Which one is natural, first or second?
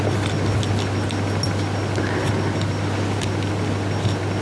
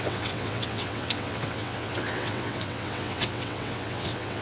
first